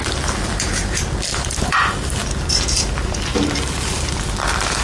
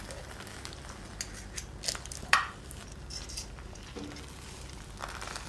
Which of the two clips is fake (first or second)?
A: first